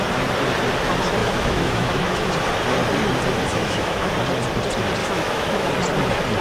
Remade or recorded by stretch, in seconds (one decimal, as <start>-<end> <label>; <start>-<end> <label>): 0.0-1.2 recorded; 1.2-2.3 remade; 2.3-3.5 recorded; 3.5-4.1 remade; 4.1-5.0 recorded; 5.0-5.7 remade; 5.7-6.4 recorded

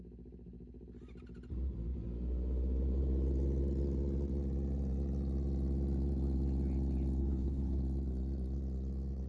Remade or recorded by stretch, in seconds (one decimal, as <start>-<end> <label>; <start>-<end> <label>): 0.0-7.2 recorded; 7.2-7.8 remade; 7.8-9.3 recorded

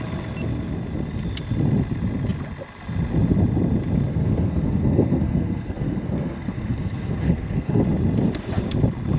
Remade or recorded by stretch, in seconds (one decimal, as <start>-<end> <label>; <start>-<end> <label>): 0.0-4.1 recorded; 4.1-7.8 remade; 7.8-9.2 recorded

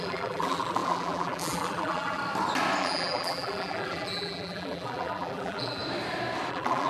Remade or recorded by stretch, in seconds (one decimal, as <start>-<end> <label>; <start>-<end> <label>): 0.0-2.2 remade; 2.2-2.8 recorded; 2.8-5.8 remade; 5.8-6.5 recorded; 6.5-6.9 remade

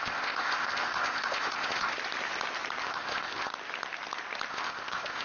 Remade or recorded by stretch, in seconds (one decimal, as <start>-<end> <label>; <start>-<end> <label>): 0.0-1.9 remade; 1.9-2.8 recorded; 2.8-3.5 remade; 3.5-4.5 recorded; 4.5-5.2 remade

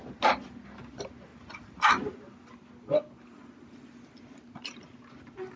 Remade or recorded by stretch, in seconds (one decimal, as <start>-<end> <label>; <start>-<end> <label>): 0.0-5.6 recorded

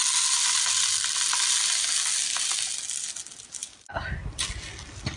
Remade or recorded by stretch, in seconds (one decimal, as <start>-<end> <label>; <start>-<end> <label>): 0.0-3.6 recorded; 3.6-4.5 remade; 4.5-5.2 recorded